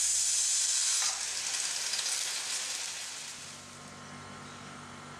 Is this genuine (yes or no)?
yes